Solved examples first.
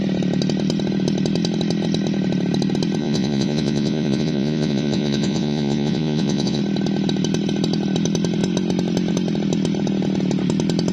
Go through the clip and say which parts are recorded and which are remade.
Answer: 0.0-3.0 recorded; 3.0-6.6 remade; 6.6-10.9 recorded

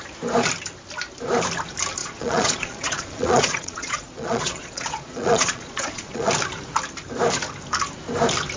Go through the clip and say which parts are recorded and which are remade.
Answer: 0.0-2.0 recorded; 2.0-6.3 remade; 6.3-8.6 recorded

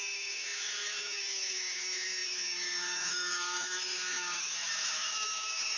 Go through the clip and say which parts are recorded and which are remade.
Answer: 0.0-5.8 remade

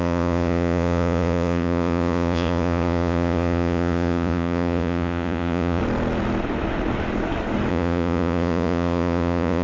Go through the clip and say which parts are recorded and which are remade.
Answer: 0.0-5.8 remade; 5.8-7.7 recorded; 7.7-9.6 remade

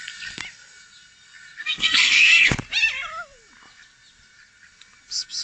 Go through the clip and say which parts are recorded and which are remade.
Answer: 0.0-1.6 recorded; 1.6-2.5 remade; 2.5-5.4 recorded

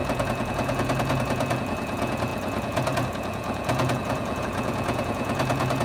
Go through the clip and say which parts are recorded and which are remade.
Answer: 0.0-5.8 remade

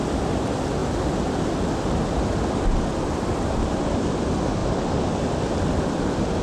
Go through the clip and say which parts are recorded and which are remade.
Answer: 0.0-6.4 recorded

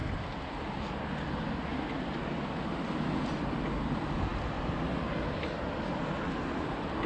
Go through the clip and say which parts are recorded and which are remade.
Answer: 0.0-7.1 recorded